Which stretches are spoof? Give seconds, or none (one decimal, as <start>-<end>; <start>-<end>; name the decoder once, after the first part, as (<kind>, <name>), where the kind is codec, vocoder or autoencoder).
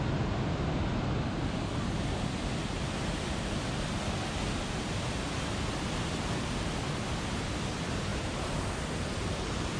none